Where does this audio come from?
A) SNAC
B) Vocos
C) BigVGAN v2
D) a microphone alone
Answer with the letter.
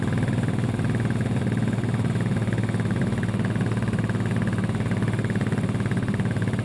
D